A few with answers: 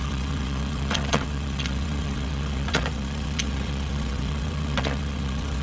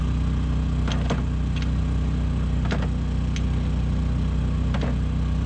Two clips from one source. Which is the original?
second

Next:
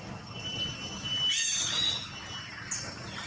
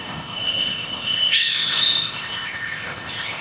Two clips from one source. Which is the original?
first